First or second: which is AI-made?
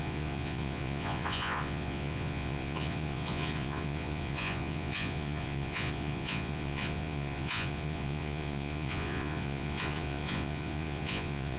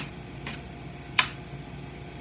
first